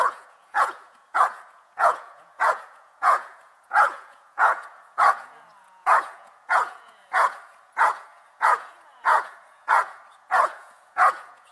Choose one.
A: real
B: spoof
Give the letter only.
B